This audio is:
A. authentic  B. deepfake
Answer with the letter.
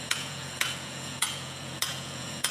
B